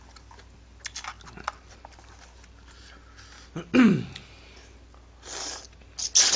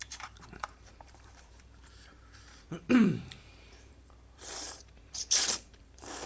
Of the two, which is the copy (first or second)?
second